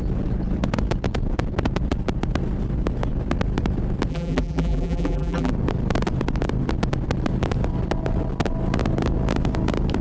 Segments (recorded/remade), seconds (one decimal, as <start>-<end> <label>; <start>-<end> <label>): 0.0-4.1 recorded; 4.1-5.5 remade; 5.5-10.0 recorded